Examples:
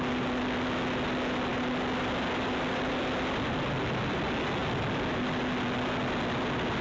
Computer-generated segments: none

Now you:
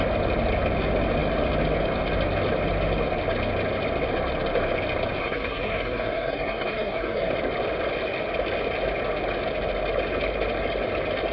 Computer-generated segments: 5.2-7.3 (codec, SNAC)

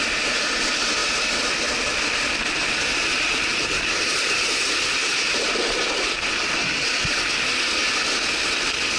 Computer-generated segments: none